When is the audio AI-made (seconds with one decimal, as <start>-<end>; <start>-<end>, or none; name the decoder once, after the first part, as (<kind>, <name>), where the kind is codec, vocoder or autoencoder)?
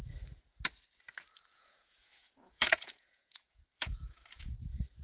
1.5-4.5 (vocoder, Vocos)